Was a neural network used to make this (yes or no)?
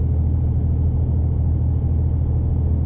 no